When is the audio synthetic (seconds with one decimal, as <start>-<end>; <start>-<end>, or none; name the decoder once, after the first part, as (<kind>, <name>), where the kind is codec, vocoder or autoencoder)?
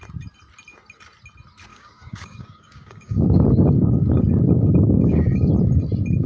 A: 1.7-5.5 (codec, DAC)